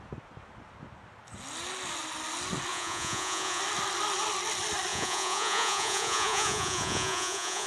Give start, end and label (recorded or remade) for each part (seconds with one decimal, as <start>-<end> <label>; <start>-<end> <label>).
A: 0.0-2.7 recorded; 2.7-3.6 remade; 3.6-4.9 recorded; 4.9-7.7 remade